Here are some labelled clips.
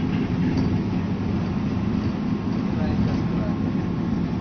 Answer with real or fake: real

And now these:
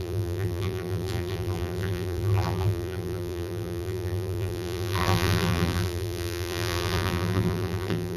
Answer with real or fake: fake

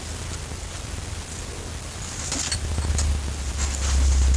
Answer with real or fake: real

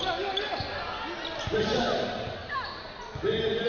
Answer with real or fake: real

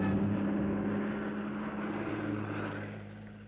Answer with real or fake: real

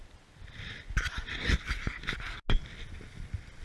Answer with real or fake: real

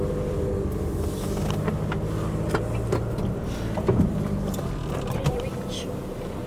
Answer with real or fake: real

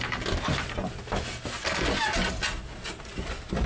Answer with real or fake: real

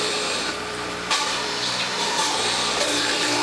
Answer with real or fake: fake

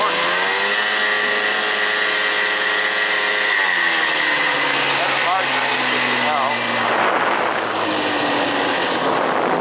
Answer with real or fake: real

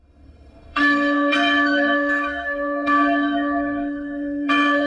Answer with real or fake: fake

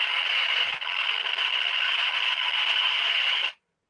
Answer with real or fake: real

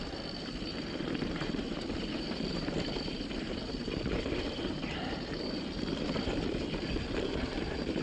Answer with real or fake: fake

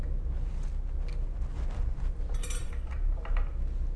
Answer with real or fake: real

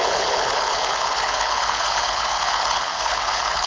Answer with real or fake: fake